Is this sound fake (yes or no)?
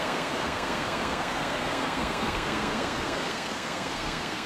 yes